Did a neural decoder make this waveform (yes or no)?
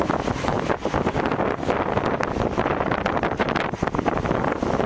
no